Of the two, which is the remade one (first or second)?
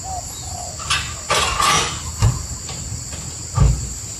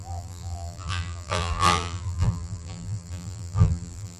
second